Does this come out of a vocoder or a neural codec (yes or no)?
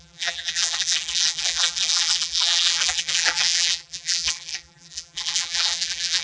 yes